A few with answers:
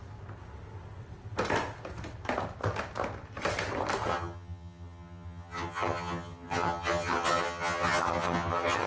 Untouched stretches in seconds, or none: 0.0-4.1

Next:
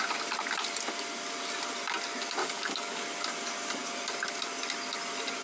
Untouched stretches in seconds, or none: 0.0-2.4; 3.0-5.4

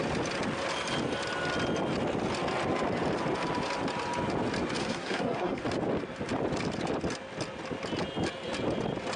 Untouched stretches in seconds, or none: 0.0-4.8; 5.6-9.2

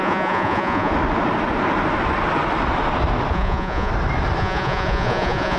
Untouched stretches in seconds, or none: 0.9-3.3; 3.9-4.4

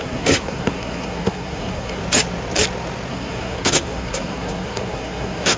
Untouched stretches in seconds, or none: 2.0-3.1